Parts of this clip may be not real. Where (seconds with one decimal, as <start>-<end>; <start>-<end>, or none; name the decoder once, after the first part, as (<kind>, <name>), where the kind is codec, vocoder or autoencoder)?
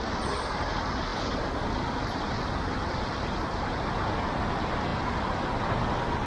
none